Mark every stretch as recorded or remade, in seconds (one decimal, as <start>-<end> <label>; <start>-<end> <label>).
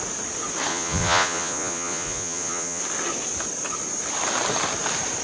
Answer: 0.0-0.7 recorded; 0.7-2.8 remade; 2.8-5.2 recorded